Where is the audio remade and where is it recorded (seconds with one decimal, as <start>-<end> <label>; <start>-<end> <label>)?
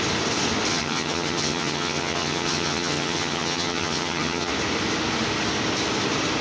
0.0-0.7 recorded; 0.7-4.5 remade; 4.5-6.4 recorded